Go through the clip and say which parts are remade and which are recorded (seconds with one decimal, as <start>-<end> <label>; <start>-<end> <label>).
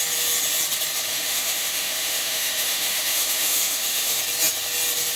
0.0-1.1 recorded; 1.1-4.2 remade; 4.2-5.2 recorded